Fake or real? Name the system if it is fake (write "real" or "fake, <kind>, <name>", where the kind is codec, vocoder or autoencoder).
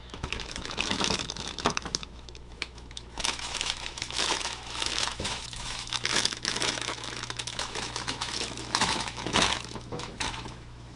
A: fake, autoencoder, DAC-VAE